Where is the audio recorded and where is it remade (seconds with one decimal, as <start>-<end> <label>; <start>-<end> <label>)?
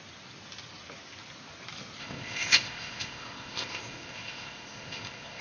0.0-2.0 recorded; 2.0-5.4 remade